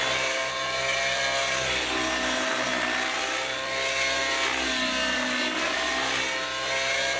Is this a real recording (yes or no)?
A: yes